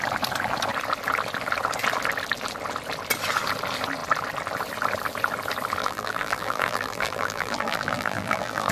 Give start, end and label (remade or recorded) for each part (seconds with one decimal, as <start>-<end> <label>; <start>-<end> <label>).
0.0-5.8 recorded; 5.8-8.7 remade